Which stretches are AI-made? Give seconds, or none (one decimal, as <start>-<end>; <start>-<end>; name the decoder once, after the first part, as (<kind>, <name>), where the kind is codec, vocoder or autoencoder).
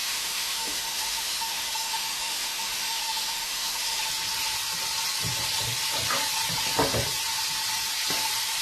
0.0-4.1 (autoencoder, DAC-VAE)